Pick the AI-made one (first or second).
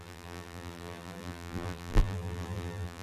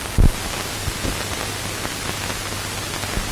first